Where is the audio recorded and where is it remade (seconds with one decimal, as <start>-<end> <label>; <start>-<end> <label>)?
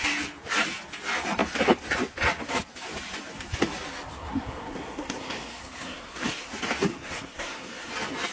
0.0-4.1 recorded; 4.1-6.5 remade; 6.5-6.9 recorded; 6.9-7.9 remade; 7.9-8.3 recorded